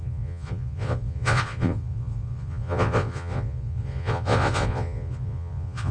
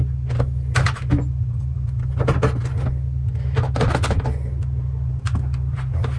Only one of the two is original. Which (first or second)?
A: second